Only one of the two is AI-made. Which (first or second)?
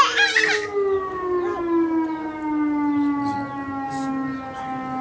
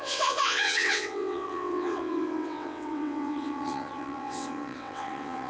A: second